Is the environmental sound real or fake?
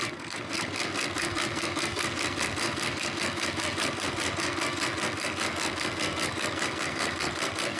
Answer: fake